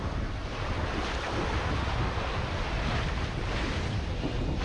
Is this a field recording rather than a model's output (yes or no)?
yes